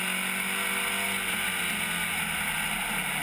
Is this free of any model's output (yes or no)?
yes